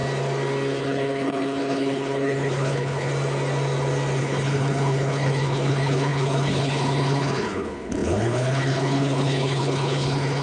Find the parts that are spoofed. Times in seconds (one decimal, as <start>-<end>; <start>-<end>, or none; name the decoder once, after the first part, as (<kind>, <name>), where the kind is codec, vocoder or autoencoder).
0.8-3.1 (codec, HILCodec); 4.2-10.4